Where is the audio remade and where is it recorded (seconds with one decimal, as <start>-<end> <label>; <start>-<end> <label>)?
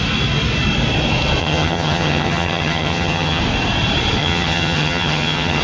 0.0-1.4 recorded; 1.4-3.4 remade; 3.4-4.2 recorded; 4.2-5.6 remade